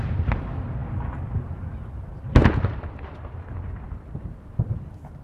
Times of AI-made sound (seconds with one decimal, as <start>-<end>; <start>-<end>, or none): 2.4-4.4